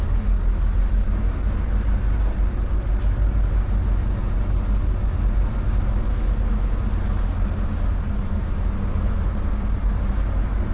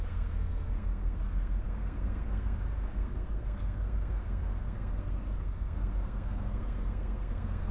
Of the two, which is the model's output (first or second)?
second